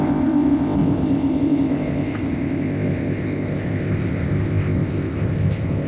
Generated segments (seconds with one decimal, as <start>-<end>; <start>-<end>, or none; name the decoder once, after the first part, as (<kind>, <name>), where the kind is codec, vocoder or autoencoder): 0.0-5.9 (codec, ZipCodec)

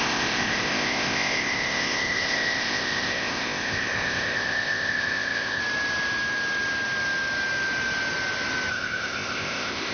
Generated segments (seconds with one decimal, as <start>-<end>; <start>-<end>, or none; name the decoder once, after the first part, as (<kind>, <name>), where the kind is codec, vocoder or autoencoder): 0.0-5.6 (codec, ZipCodec); 8.7-9.9

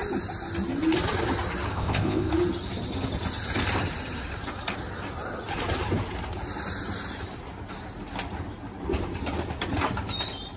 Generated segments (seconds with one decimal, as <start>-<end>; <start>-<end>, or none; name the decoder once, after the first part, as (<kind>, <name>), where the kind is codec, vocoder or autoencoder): 1.7-2.3 (codec, ZipCodec)

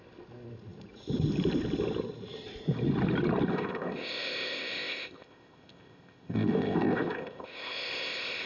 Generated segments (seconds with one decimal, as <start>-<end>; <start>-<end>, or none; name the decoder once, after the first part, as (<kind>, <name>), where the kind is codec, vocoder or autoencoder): 3.5-8.5 (codec, ZipCodec)

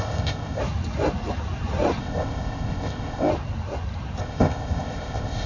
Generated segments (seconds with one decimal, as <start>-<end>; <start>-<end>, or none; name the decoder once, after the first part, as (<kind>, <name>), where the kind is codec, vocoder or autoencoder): 0.0-0.6 (codec, ZipCodec); 2.0-3.3; 4.2-5.5

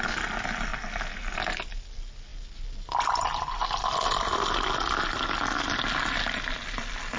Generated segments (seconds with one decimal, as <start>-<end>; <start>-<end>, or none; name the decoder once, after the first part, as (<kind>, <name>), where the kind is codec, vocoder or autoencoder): none

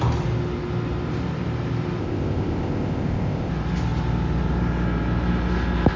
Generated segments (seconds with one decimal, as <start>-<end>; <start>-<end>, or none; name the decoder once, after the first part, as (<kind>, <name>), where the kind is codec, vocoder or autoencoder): 2.0-3.5 (codec, ZipCodec)

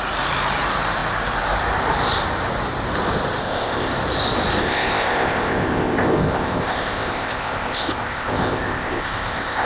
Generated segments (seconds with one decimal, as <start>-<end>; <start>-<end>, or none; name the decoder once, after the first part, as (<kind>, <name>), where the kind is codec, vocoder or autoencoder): 3.4-3.9 (codec, ZipCodec); 4.6-9.7